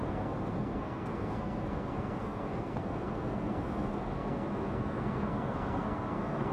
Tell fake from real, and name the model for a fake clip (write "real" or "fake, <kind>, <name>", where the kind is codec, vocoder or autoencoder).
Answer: fake, codec, SNAC